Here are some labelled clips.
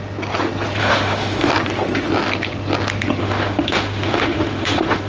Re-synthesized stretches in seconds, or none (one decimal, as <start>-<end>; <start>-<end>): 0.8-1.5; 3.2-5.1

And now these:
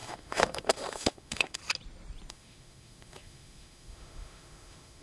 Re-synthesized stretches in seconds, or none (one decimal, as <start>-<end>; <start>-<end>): 0.0-1.6; 2.3-5.0

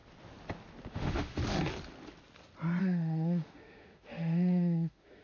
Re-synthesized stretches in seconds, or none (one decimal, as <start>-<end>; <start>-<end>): 0.9-1.4; 2.8-5.2

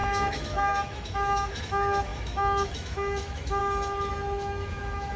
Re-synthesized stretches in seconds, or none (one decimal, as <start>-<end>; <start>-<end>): 0.0-3.6; 4.1-5.2